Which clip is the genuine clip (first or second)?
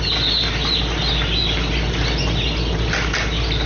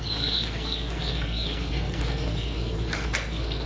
first